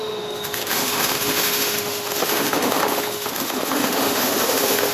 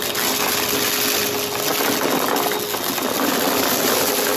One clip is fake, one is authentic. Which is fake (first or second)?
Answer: first